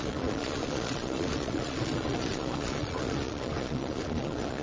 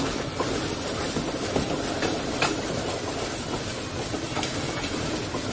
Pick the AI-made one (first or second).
first